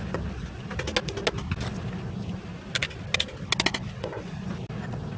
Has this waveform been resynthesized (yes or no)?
no